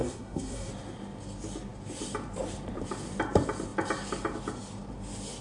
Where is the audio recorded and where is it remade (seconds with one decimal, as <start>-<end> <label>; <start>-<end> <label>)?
0.0-0.7 remade; 0.7-5.4 recorded